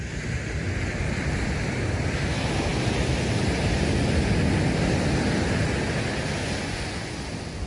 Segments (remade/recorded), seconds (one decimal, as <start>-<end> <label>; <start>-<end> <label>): 0.0-6.4 recorded; 6.4-7.1 remade; 7.1-7.7 recorded